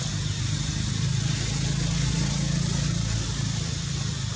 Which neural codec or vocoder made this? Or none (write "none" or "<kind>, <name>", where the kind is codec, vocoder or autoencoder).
none